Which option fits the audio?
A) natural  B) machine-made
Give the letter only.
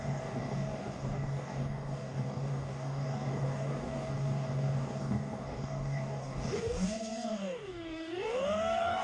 B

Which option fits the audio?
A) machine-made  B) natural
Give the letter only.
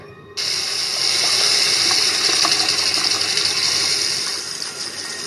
B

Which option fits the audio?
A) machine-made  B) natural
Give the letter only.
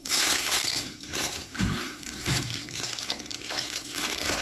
A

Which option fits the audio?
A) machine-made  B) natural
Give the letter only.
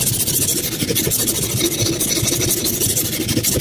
B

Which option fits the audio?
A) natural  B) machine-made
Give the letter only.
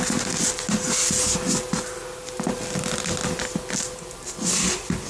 A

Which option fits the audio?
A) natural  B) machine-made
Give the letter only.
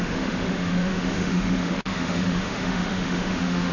B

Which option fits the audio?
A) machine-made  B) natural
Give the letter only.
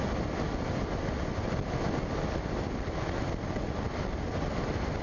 B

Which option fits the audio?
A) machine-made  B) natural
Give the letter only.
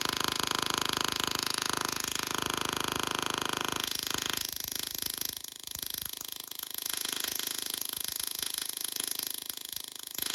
A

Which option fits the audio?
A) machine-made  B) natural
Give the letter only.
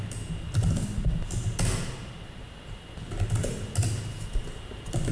B